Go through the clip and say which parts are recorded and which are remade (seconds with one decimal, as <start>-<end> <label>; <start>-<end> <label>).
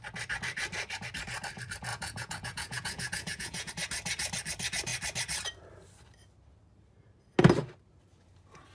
0.0-1.9 recorded; 1.9-3.7 remade; 3.7-8.7 recorded